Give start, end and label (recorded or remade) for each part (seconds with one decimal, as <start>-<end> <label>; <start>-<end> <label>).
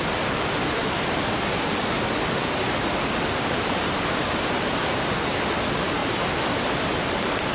0.0-7.5 recorded